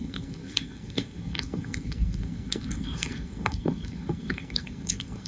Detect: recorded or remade remade